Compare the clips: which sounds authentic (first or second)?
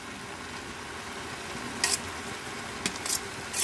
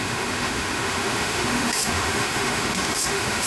first